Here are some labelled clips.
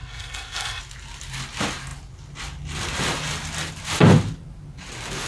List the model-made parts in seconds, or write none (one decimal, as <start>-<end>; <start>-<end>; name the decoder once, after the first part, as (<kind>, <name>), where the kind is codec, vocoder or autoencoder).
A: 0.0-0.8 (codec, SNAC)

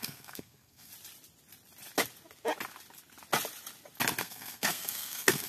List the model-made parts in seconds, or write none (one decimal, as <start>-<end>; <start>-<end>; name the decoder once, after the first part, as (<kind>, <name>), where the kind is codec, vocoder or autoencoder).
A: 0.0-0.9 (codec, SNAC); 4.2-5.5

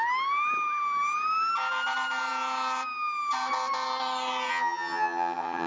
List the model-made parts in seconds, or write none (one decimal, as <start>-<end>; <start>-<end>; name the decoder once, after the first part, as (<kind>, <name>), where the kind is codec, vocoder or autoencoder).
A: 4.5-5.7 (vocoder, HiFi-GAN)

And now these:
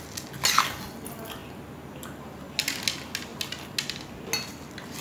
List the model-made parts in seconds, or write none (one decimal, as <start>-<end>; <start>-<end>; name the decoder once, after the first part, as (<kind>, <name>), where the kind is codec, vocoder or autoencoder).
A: none

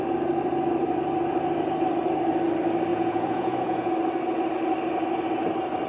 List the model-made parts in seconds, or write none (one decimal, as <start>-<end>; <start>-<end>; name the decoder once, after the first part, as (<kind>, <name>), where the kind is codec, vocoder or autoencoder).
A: 2.9-3.9 (vocoder, Vocos)